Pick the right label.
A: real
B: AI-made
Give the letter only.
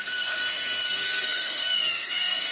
B